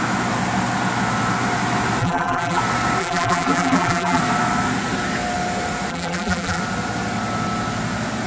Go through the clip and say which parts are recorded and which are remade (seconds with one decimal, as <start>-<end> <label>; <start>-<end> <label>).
0.0-2.0 recorded; 2.0-2.6 remade; 2.6-3.0 recorded; 3.0-4.2 remade; 4.2-5.9 recorded; 5.9-6.6 remade; 6.6-8.3 recorded